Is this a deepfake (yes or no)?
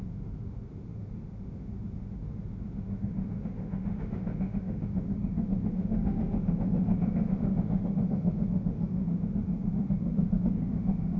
yes